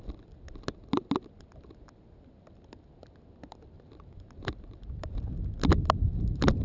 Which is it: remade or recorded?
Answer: recorded